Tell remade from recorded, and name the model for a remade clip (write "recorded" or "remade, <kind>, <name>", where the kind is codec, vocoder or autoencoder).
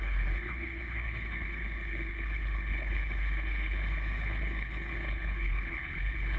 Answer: remade, codec, HILCodec